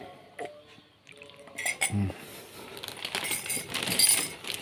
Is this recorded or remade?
recorded